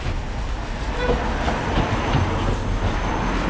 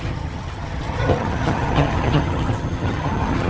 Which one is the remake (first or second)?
second